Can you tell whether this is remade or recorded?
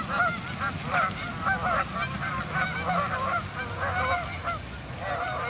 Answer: recorded